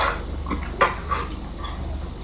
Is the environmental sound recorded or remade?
recorded